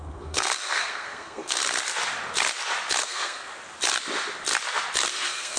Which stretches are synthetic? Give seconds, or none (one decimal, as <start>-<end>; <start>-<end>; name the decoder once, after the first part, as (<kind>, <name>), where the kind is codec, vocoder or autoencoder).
0.0-1.6 (codec, SNAC); 3.0-3.5; 5.1-5.6